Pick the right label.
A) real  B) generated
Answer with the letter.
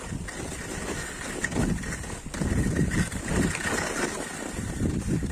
A